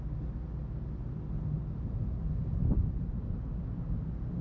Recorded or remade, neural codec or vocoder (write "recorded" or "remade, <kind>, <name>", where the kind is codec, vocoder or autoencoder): recorded